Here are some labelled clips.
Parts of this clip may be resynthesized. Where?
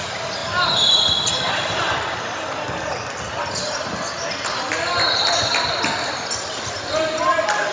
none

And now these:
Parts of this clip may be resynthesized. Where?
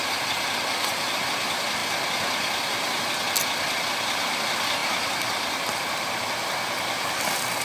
4.8-6.5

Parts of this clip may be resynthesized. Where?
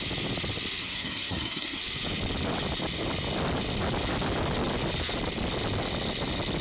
0.8-1.8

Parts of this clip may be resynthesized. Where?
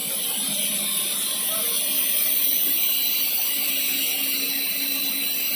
none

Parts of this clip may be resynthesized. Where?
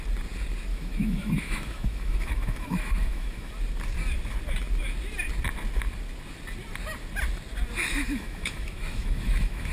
0.7-3.5; 7.9-9.7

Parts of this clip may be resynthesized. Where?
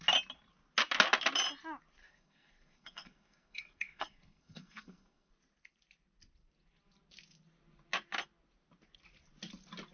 2.0-5.3